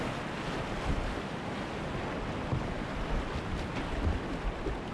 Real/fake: real